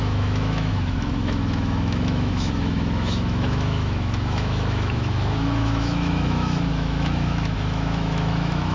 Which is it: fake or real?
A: fake